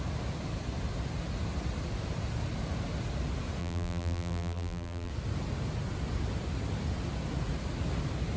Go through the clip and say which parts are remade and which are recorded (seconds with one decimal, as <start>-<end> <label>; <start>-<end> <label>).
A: 0.0-3.6 recorded; 3.6-5.1 remade; 5.1-8.4 recorded